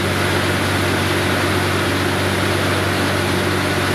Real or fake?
real